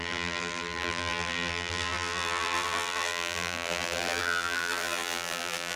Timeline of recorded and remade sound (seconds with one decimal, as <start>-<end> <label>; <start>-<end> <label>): 0.0-5.8 remade